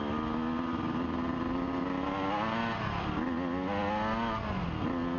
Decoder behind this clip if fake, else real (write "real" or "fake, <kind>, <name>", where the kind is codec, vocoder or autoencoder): real